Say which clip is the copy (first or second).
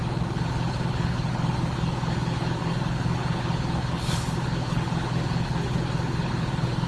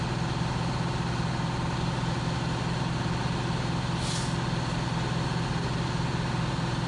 first